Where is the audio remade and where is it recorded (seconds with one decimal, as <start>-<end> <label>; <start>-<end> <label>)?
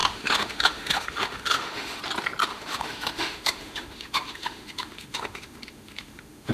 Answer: 0.0-2.0 remade; 2.0-2.5 recorded; 2.5-6.5 remade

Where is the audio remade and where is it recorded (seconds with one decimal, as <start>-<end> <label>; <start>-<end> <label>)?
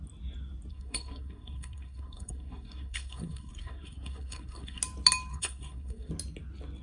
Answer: 0.0-0.7 recorded; 0.7-4.8 remade; 4.8-5.3 recorded; 5.3-6.1 remade; 6.1-6.8 recorded